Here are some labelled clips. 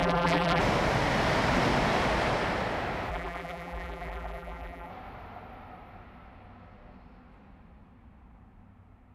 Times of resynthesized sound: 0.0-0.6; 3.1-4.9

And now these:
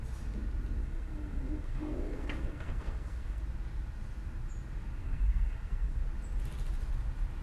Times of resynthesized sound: 0.8-3.4; 5.0-6.0

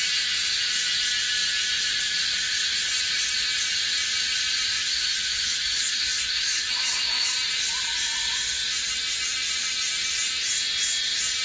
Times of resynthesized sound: 4.7-7.3

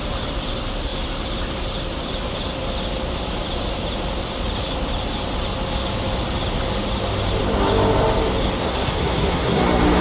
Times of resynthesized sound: 8.6-9.6

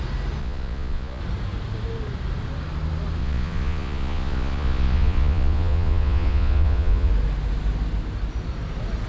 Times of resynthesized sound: 0.4-1.2; 3.2-7.1